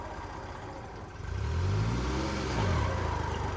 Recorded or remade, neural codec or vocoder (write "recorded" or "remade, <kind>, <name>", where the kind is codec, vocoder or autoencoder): recorded